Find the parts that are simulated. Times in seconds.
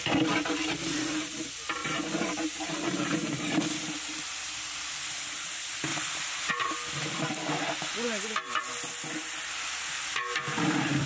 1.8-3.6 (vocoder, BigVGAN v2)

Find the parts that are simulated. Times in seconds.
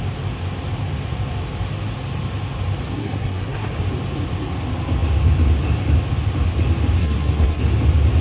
3.0-3.7 (codec, SNAC); 7.0-7.6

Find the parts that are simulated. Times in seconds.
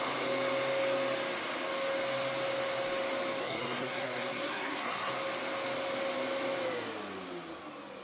3.4-5.1 (codec, SNAC)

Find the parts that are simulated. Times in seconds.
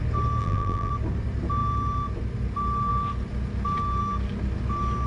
0.4-0.9 (vocoder, BigVGAN v2)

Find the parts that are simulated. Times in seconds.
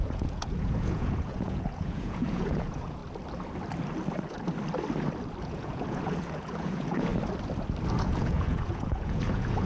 0.0-3.0 (vocoder, Vocos); 5.4-7.1; 8.0-9.7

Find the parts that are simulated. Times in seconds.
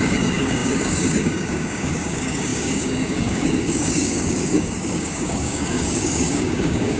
0.0-7.0 (codec, DAC)